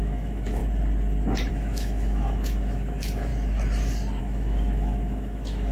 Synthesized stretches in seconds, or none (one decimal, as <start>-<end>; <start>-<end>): 0.0-0.6; 1.5-3.3; 4.2-5.7